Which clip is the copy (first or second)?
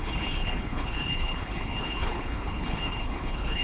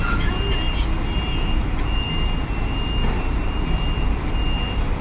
first